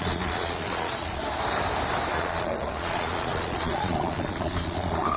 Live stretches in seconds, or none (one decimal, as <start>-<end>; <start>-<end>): 1.2-2.1